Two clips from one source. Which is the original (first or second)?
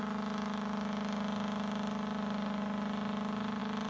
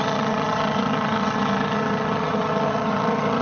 first